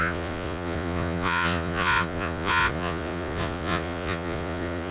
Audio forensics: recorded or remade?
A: remade